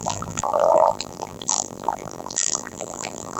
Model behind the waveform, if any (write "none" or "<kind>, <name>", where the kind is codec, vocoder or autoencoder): vocoder, BigVGAN v2